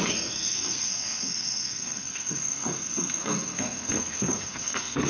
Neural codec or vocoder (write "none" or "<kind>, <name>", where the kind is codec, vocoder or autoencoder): codec, SNAC